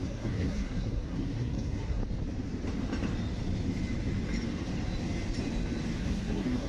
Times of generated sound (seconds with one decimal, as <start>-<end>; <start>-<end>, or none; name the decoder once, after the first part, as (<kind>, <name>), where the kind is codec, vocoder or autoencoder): 0.0-2.0 (codec, SNAC); 6.0-6.7